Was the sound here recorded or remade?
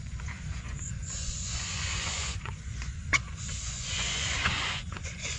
remade